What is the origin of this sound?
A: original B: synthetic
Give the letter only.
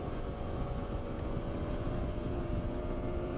B